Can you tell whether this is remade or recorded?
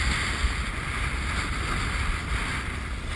recorded